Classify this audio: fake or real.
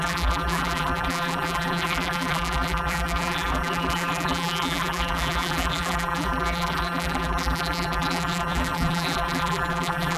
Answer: fake